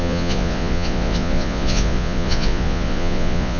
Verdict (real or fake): fake